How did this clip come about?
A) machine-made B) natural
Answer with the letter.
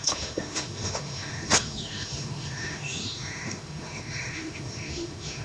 A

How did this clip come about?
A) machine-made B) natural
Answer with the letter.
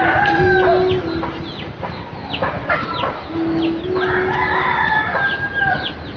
B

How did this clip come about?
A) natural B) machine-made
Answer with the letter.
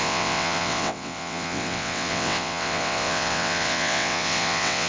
B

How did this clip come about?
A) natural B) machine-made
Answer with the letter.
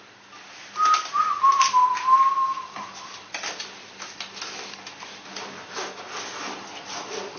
A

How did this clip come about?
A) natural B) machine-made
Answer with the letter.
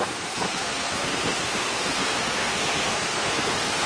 B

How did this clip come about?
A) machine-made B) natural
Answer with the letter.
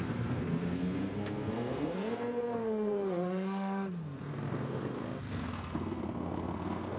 A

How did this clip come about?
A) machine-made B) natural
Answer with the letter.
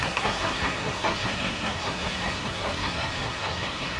A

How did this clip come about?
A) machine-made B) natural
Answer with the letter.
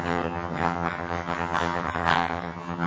A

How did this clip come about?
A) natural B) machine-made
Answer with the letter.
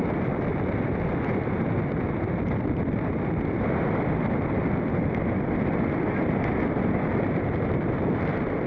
A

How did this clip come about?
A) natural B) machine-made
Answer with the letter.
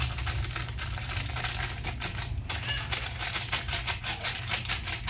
A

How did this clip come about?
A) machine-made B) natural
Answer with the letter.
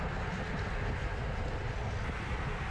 B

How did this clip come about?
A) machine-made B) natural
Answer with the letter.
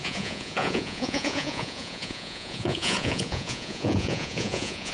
A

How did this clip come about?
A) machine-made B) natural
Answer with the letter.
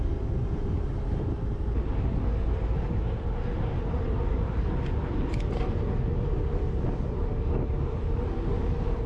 B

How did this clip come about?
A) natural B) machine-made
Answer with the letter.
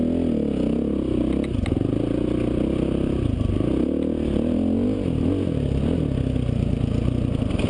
A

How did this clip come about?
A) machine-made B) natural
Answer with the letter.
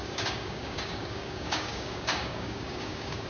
A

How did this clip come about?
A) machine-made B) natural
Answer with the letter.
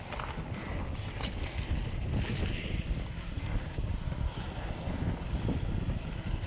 B